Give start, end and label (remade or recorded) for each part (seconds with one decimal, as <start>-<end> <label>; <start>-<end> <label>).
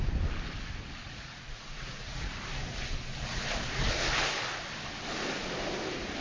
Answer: 0.0-1.0 recorded; 1.0-2.3 remade; 2.3-6.2 recorded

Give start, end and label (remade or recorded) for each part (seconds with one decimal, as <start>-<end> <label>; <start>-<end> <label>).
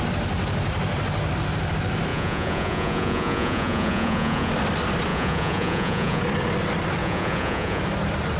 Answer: 0.0-2.1 recorded; 2.1-4.5 remade; 4.5-5.1 recorded; 5.1-6.2 remade; 6.2-7.0 recorded; 7.0-7.8 remade; 7.8-8.4 recorded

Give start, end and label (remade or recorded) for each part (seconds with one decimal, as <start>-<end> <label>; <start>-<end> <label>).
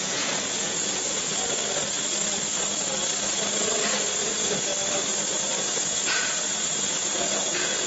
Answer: 0.0-1.3 remade; 1.3-4.2 recorded; 4.2-4.7 remade; 4.7-5.6 recorded; 5.6-7.9 remade